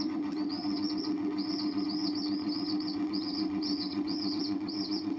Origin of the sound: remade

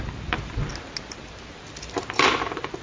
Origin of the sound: recorded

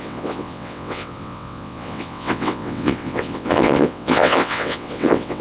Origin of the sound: remade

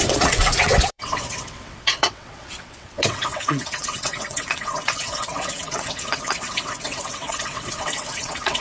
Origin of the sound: remade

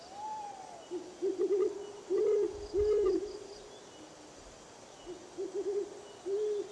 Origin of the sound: recorded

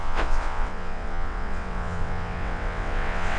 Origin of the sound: remade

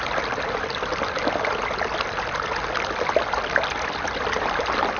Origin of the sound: recorded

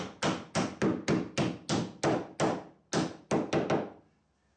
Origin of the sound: recorded